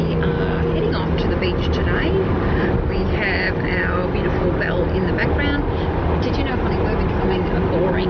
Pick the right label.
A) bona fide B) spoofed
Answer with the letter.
A